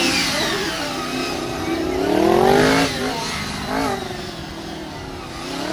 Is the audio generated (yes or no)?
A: no